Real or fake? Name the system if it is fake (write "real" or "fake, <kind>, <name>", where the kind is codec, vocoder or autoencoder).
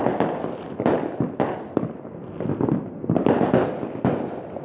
real